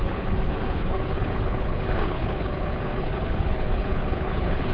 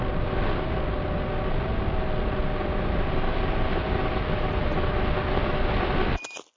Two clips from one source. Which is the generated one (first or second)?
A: first